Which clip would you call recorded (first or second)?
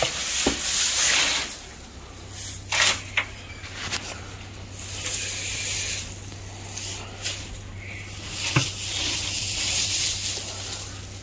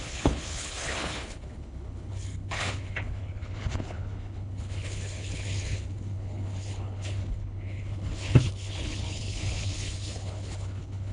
first